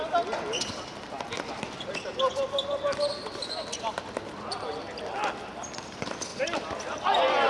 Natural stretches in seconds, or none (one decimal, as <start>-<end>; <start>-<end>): 0.0-7.5